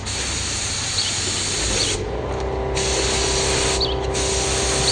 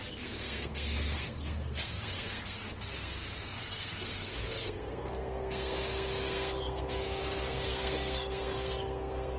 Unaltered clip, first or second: first